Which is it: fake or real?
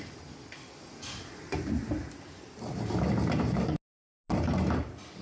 real